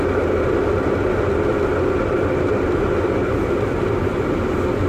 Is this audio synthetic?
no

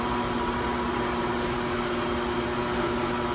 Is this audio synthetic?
no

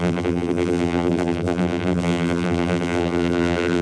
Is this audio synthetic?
yes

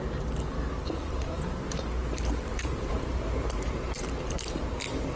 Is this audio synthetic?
yes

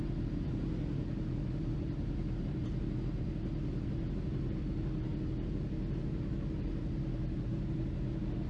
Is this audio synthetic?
no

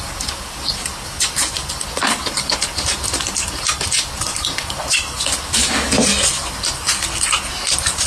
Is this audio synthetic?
no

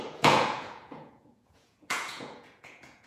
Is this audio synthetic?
yes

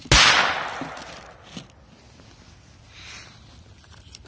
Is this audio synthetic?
no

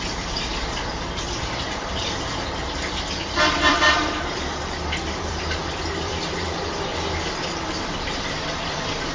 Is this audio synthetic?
yes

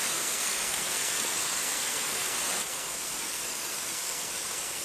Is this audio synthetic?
yes